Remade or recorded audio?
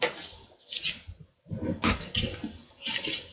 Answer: recorded